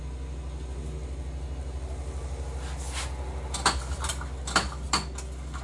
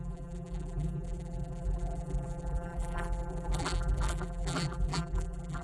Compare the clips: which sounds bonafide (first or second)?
first